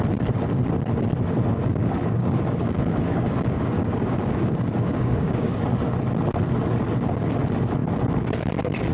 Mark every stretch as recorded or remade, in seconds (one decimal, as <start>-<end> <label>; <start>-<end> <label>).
0.0-1.5 recorded; 1.5-5.6 remade; 5.6-8.9 recorded